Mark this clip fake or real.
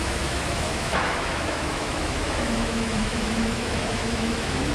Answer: fake